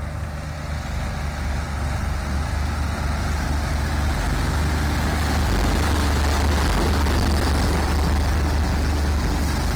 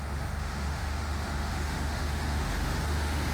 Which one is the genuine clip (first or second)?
first